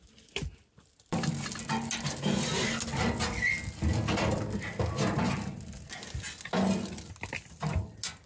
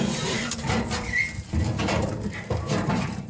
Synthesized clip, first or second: second